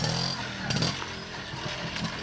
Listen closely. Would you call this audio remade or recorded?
recorded